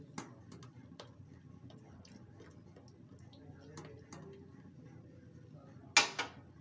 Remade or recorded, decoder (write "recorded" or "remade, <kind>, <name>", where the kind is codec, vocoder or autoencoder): recorded